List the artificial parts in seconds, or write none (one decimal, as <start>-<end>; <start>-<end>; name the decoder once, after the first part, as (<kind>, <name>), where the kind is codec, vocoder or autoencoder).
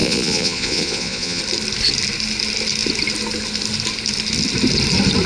0.0-1.4 (vocoder, Vocos)